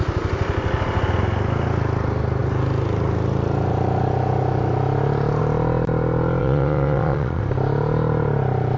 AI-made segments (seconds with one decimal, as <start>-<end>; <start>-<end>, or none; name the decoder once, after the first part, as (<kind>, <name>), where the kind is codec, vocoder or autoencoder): 6.4-7.4 (vocoder, Vocos)

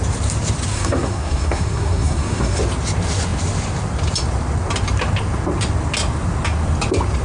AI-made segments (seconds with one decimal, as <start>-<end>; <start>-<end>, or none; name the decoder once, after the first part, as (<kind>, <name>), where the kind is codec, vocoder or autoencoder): 0.7-2.6 (codec, SNAC)

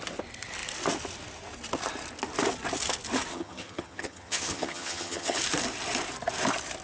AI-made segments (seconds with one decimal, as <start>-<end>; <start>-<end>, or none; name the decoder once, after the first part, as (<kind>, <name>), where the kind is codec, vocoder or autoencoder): 3.3-5.4 (vocoder, HiFi-GAN)